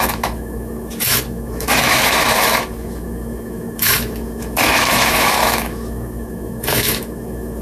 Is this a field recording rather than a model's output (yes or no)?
no